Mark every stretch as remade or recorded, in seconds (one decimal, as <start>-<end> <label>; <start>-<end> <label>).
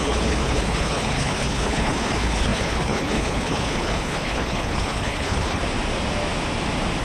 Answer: 0.0-5.6 remade; 5.6-7.0 recorded